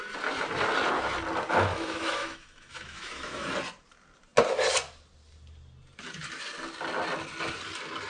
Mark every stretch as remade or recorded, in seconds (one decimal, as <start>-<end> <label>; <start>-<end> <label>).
0.0-1.7 recorded; 1.7-3.5 remade; 3.5-8.1 recorded